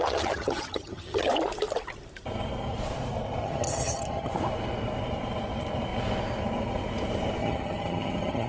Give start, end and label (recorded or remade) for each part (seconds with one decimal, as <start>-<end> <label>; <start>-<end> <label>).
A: 0.0-1.3 remade; 1.3-3.4 recorded; 3.4-4.3 remade; 4.3-7.4 recorded; 7.4-8.5 remade